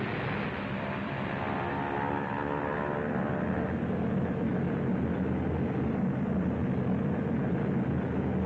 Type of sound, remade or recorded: recorded